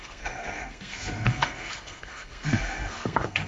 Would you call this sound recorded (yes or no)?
no